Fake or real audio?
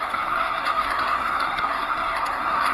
fake